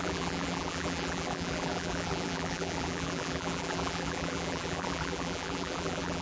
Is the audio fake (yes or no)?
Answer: yes